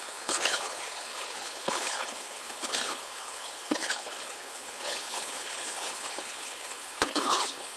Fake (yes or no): yes